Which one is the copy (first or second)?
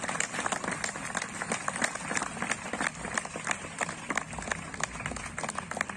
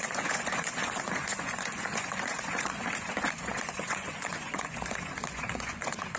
second